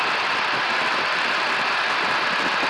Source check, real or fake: real